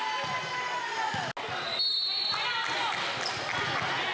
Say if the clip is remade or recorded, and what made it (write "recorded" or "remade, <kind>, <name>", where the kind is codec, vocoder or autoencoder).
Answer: recorded